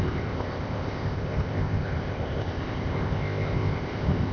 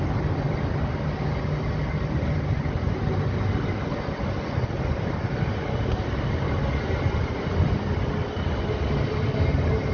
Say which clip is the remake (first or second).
first